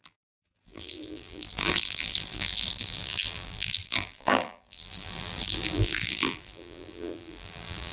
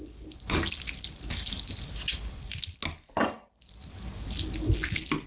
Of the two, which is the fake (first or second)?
first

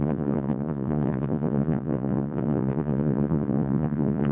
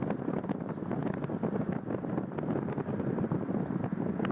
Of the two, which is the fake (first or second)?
first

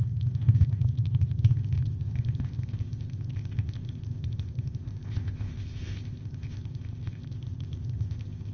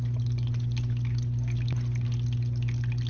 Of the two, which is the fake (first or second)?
first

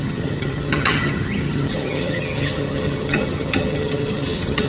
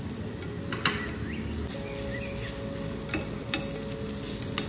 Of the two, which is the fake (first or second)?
first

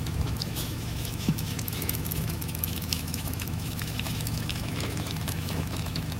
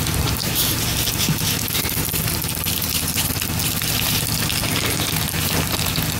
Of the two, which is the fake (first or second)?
first